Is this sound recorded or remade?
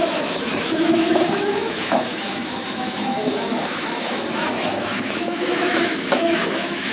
remade